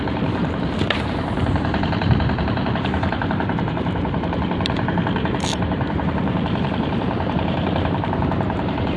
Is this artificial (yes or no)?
yes